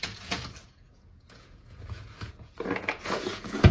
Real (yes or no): no